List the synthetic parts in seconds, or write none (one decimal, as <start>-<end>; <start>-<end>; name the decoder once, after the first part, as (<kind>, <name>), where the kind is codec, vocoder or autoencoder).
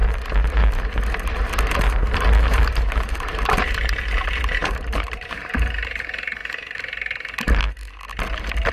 1.4-6.4 (vocoder, BigVGAN v2)